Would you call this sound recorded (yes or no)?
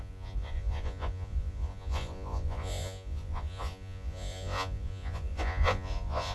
no